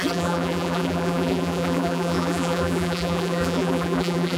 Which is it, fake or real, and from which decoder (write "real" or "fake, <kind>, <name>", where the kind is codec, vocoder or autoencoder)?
fake, vocoder, BigVGAN v2